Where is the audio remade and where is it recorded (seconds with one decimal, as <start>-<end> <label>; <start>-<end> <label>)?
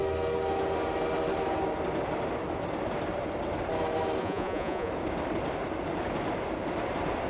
0.0-4.2 recorded; 4.2-4.9 remade; 4.9-7.3 recorded